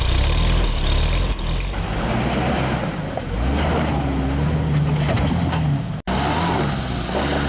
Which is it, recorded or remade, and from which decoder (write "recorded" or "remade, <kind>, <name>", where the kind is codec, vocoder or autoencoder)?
recorded